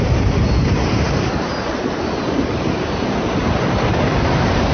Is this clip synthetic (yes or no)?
yes